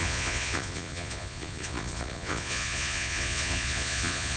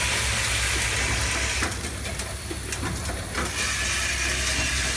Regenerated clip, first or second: first